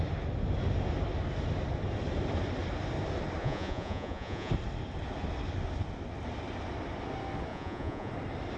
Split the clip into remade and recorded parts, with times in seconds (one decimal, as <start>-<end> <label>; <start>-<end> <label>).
0.0-3.4 recorded; 3.4-4.5 remade; 4.5-7.5 recorded; 7.5-8.1 remade; 8.1-8.6 recorded